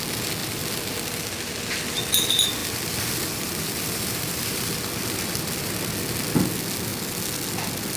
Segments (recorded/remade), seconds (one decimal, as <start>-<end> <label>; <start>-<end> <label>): 0.0-0.4 recorded; 0.4-1.6 remade; 1.6-2.6 recorded; 2.6-5.9 remade; 5.9-8.0 recorded